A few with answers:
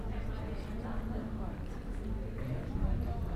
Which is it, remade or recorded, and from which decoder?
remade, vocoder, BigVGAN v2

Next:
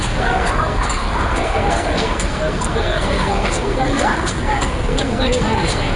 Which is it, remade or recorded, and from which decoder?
remade, codec, SNAC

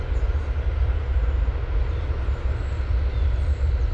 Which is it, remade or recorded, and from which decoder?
recorded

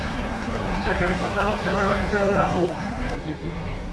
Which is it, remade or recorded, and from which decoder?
remade, codec, SNAC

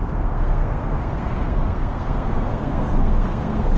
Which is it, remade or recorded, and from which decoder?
remade, codec, SNAC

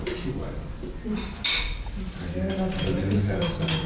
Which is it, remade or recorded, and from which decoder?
recorded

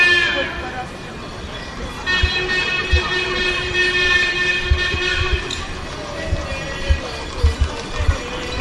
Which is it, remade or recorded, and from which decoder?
recorded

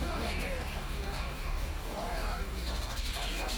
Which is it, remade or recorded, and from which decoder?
remade, codec, DAC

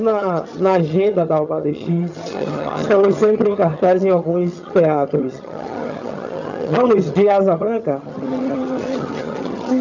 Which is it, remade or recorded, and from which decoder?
remade, vocoder, HiFi-GAN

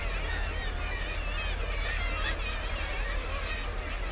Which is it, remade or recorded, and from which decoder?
recorded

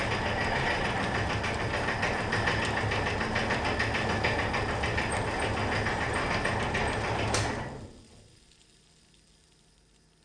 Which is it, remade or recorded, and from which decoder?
recorded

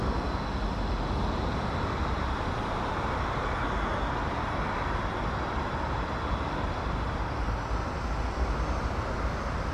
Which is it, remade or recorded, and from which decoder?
recorded